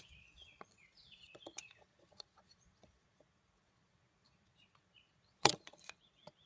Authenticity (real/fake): fake